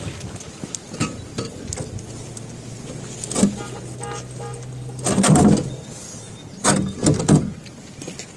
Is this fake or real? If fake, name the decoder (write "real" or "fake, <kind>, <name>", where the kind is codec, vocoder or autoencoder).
real